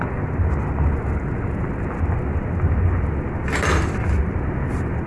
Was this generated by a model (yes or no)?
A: no